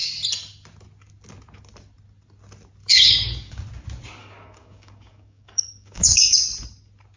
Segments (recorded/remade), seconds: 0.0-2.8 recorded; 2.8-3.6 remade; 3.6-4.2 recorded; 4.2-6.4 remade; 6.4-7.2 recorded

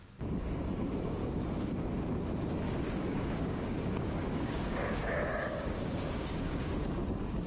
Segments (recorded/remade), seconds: 0.0-1.2 remade; 1.2-2.6 recorded; 2.6-7.5 remade

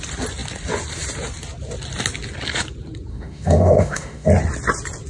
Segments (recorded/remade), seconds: 0.0-3.1 recorded; 3.1-4.3 remade; 4.3-5.1 recorded

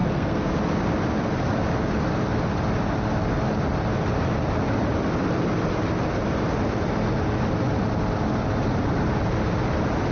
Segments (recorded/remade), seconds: 0.0-0.5 remade; 0.5-10.1 recorded

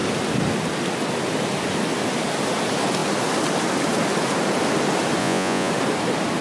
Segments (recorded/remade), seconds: 0.0-5.2 recorded; 5.2-5.7 remade; 5.7-6.4 recorded